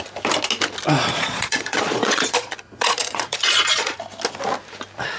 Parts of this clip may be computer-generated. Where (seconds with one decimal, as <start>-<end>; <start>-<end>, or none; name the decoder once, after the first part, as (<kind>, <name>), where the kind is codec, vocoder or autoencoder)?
1.1-4.0 (vocoder, Vocos)